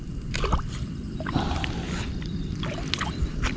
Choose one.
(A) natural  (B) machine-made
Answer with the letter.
B